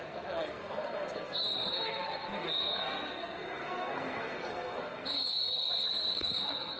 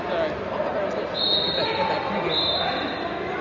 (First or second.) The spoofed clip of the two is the first